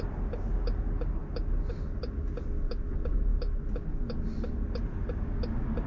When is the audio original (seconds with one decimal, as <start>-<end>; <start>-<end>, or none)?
0.0-5.9